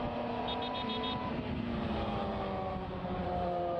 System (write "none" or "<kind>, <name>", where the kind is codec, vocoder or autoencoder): vocoder, BigVGAN v2